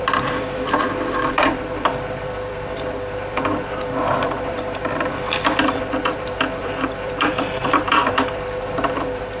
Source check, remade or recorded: remade